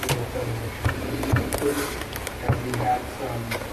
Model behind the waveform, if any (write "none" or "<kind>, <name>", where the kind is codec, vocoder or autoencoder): none